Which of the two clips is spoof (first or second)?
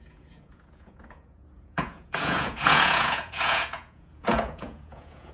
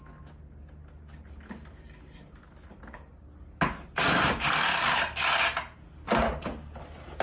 first